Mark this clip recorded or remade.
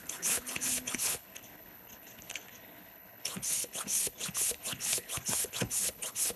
remade